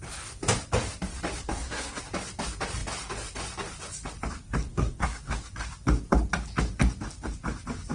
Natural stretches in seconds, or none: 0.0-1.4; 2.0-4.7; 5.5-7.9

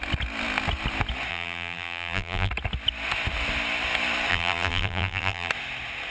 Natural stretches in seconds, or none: 0.0-1.3; 2.5-4.3; 5.5-6.1

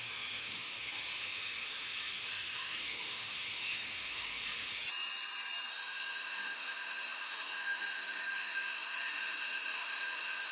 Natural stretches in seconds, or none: 4.8-5.7

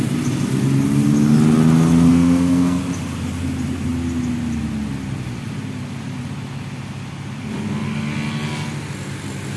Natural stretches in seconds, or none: 0.0-2.1; 2.8-9.6

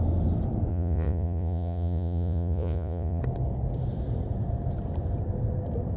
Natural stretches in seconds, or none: 0.0-0.7; 3.2-6.0

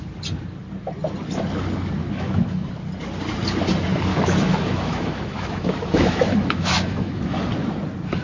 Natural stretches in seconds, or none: 0.0-2.0; 2.7-4.1; 7.4-8.2

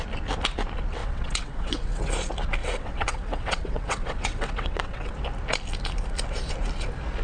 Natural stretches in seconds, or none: 0.0-1.0; 2.1-2.6; 5.1-7.2